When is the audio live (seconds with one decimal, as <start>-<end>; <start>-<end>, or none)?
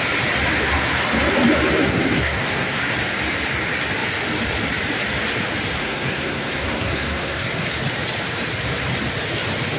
0.0-1.8; 2.8-5.8; 7.5-9.8